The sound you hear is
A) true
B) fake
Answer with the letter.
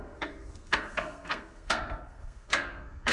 B